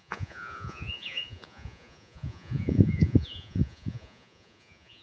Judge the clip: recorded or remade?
remade